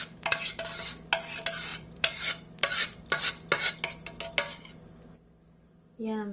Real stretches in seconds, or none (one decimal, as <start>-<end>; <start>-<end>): 0.0-1.7; 3.2-6.3